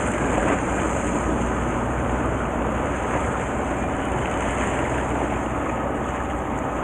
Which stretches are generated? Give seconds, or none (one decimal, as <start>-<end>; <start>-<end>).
0.4-4.5